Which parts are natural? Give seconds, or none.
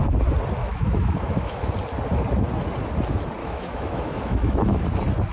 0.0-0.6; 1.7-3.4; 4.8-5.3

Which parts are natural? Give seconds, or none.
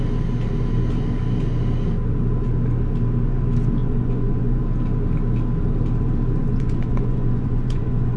0.0-3.8; 4.6-6.4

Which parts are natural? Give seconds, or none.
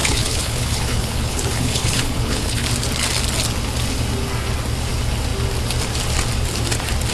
2.7-7.1